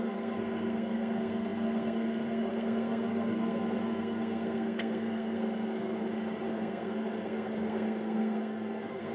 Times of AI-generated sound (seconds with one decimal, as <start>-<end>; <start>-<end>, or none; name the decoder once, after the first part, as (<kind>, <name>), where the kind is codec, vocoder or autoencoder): 0.0-6.0 (codec, SNAC); 6.5-9.1